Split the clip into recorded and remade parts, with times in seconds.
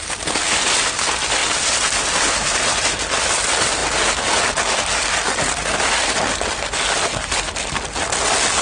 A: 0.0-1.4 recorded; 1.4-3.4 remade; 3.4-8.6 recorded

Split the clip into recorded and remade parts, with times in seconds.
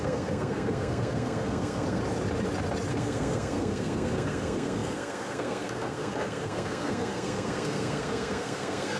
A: 0.0-2.0 remade; 2.0-2.9 recorded; 2.9-9.0 remade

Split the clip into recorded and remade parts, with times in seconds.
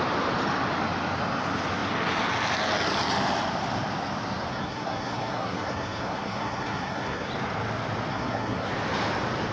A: 0.0-4.5 recorded; 4.5-7.3 remade; 7.3-8.1 recorded; 8.1-8.7 remade; 8.7-9.5 recorded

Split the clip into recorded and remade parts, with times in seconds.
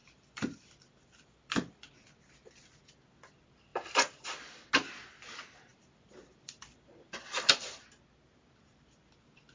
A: 0.0-1.9 remade; 1.9-3.7 recorded; 3.7-4.7 remade; 4.7-5.7 recorded; 5.7-7.5 remade; 7.5-9.5 recorded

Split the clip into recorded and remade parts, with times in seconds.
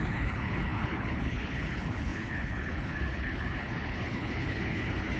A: 0.0-5.2 remade